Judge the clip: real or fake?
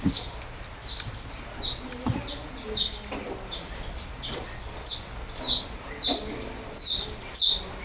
real